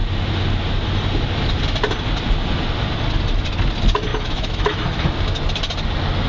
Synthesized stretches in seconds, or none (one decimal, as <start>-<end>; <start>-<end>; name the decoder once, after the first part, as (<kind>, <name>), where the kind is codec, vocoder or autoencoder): 4.1-5.1 (autoencoder, DAC-VAE)